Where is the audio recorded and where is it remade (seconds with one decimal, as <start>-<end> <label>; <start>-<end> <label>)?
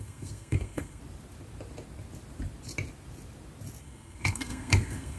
0.0-1.0 remade; 1.0-3.8 recorded; 3.8-5.2 remade